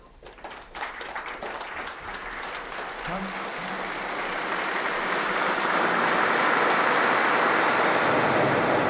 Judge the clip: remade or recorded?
recorded